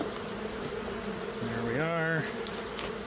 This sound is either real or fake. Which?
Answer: real